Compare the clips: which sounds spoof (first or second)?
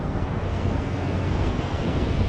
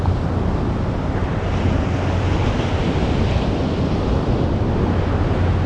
first